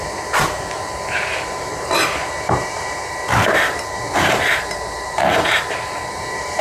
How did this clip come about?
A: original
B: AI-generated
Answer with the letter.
B